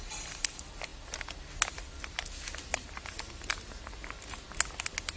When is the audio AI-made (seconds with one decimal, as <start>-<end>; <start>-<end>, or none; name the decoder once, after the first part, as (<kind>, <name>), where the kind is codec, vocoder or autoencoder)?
none